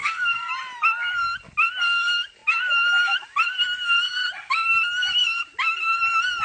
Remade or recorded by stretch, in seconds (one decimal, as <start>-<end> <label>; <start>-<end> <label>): 0.0-0.5 remade; 0.5-6.4 recorded